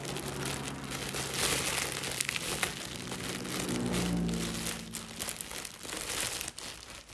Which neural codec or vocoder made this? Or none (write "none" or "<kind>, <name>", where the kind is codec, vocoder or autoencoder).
none